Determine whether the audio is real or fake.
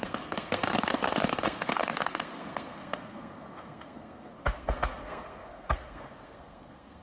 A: fake